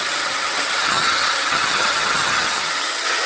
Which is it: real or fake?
fake